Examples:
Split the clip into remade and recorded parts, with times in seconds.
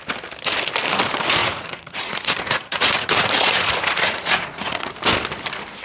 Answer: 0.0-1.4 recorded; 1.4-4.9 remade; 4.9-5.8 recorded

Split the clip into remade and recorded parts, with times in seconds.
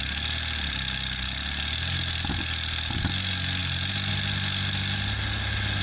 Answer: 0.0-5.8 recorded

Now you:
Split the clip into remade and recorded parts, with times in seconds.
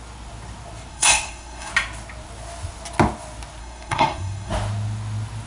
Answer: 0.0-0.9 recorded; 0.9-1.7 remade; 1.7-3.6 recorded; 3.6-4.5 remade; 4.5-5.5 recorded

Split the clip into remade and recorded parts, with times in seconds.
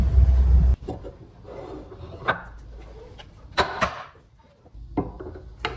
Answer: 0.0-5.8 recorded